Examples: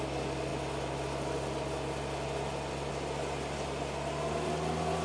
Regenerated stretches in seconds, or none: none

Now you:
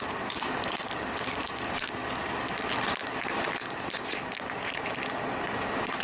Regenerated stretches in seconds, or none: 0.0-2.0 (vocoder, BigVGAN v2); 3.0-3.6